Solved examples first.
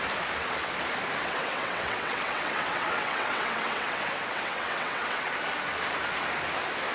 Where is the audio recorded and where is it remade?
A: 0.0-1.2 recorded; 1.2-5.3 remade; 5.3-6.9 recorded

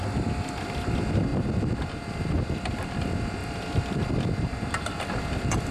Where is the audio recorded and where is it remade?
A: 0.0-1.3 remade; 1.3-2.1 recorded; 2.1-5.7 remade

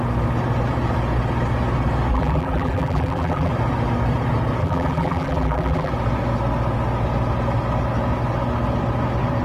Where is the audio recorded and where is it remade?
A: 0.0-2.1 recorded; 2.1-3.5 remade; 3.5-4.6 recorded; 4.6-5.9 remade; 5.9-9.4 recorded

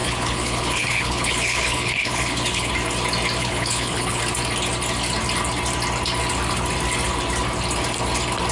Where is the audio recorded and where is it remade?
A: 0.0-2.7 remade; 2.7-3.4 recorded; 3.4-4.2 remade; 4.2-8.5 recorded

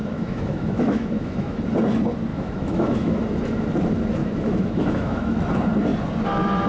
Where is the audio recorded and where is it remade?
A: 0.0-1.6 remade; 1.6-2.3 recorded; 2.3-3.2 remade; 3.2-4.2 recorded; 4.2-5.5 remade; 5.5-6.7 recorded

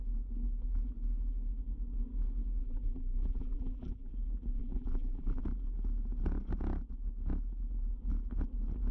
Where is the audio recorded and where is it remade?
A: 0.0-2.6 recorded; 2.6-4.1 remade; 4.1-4.6 recorded; 4.6-5.4 remade; 5.4-8.9 recorded

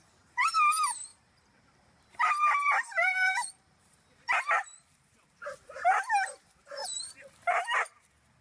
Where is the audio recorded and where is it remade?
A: 0.0-1.1 recorded; 1.1-4.5 remade; 4.5-6.8 recorded; 6.8-7.9 remade; 7.9-8.4 recorded

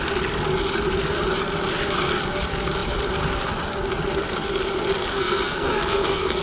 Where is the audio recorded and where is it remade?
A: 0.0-5.1 recorded; 5.1-6.4 remade